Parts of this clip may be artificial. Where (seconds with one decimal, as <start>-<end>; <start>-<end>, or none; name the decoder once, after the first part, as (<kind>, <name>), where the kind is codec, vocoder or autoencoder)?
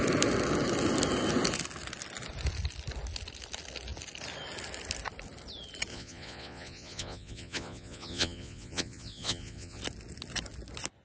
5.9-9.8 (vocoder, Vocos)